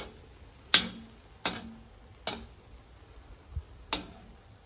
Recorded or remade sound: recorded